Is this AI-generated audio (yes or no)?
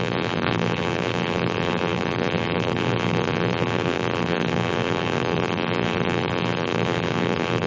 yes